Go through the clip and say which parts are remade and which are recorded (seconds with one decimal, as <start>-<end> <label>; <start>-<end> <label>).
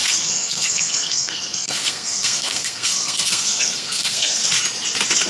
0.0-4.4 remade; 4.4-5.3 recorded